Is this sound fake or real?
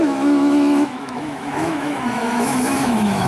fake